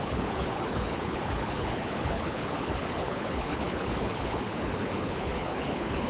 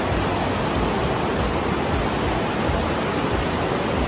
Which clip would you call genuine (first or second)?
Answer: second